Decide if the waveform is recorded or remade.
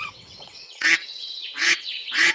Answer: remade